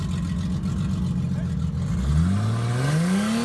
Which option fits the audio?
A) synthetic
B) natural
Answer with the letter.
B